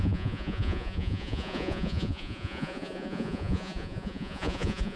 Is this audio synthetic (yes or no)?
yes